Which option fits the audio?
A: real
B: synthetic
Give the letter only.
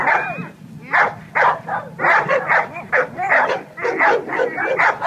A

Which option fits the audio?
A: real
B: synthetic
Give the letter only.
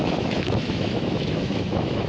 B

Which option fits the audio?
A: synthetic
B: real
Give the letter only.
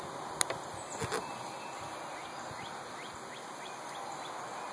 B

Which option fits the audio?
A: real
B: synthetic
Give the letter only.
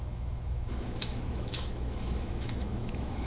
B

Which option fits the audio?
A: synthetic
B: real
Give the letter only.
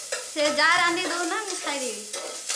B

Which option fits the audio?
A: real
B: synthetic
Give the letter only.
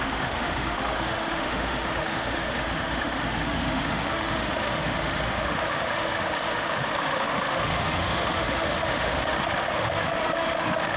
B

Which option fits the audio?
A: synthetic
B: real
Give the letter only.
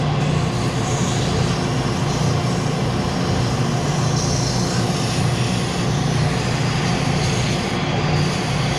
B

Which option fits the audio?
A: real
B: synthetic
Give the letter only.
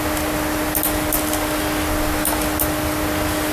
A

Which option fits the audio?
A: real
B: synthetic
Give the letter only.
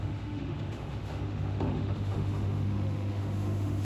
B